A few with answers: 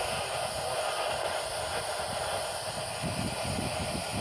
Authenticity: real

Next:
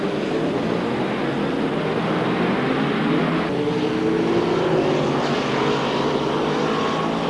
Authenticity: real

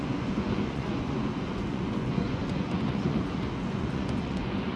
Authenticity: fake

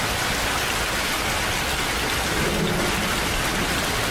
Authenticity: real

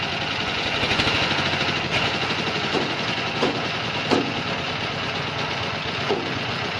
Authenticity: fake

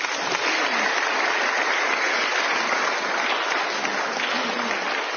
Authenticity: real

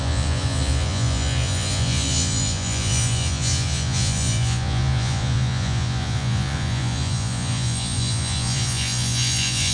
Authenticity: fake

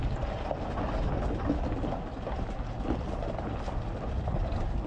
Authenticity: real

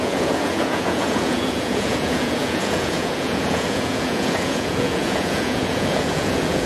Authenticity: fake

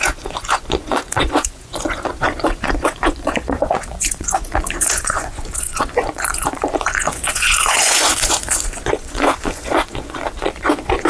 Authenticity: fake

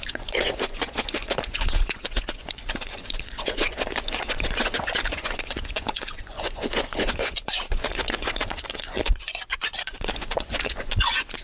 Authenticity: fake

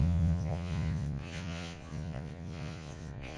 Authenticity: fake